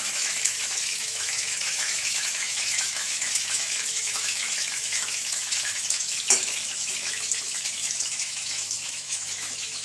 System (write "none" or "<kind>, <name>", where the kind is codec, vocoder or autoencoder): autoencoder, DAC-VAE